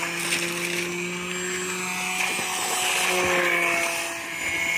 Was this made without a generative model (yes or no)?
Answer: yes